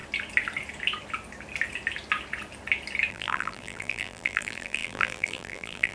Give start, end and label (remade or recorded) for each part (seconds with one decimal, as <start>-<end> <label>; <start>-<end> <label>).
0.0-3.1 recorded; 3.1-5.9 remade